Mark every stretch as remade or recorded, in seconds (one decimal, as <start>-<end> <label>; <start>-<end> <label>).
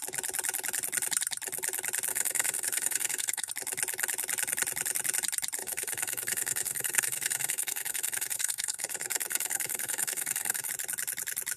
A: 0.0-2.1 recorded; 2.1-3.5 remade; 3.5-5.6 recorded; 5.6-10.7 remade; 10.7-11.6 recorded